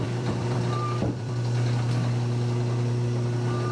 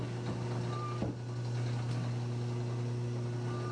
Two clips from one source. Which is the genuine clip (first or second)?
second